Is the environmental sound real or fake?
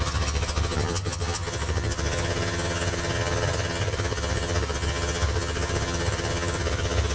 fake